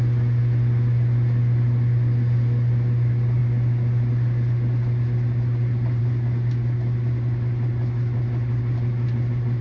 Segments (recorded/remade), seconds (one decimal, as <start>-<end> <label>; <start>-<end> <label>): 0.0-9.6 recorded